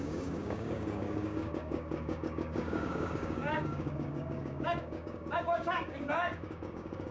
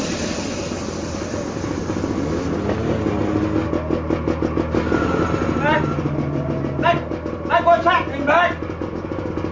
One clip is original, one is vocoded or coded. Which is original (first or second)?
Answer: second